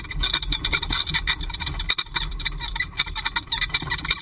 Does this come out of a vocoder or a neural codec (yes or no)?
yes